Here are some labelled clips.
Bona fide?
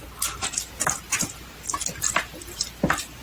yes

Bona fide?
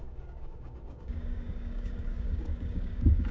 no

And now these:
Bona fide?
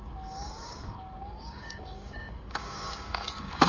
no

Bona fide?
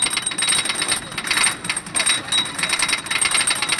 yes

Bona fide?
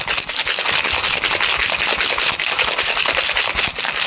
yes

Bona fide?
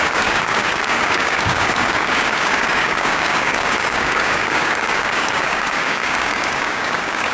no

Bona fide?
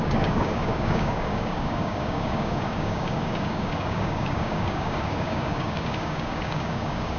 no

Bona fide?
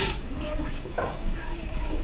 no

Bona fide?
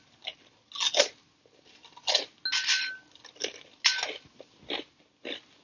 yes